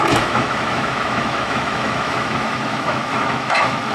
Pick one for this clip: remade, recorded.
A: remade